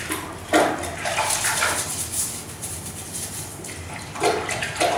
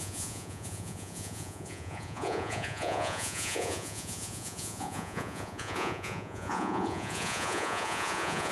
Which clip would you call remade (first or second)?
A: second